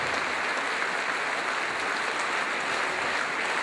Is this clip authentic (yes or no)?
yes